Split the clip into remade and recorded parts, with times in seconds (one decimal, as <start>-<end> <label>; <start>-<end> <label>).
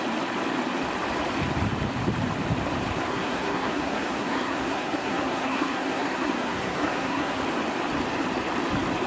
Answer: 0.0-3.1 recorded; 3.1-7.4 remade; 7.4-9.1 recorded